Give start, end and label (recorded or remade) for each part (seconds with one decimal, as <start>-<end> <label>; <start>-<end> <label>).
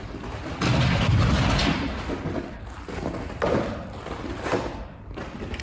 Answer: 0.0-5.6 recorded